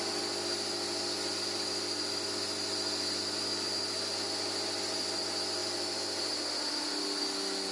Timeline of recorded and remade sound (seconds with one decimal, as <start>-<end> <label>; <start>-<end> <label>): 0.0-7.7 recorded